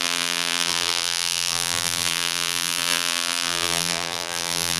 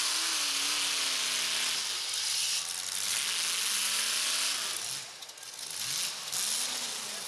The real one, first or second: second